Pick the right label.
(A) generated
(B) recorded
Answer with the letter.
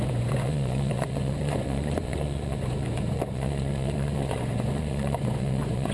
A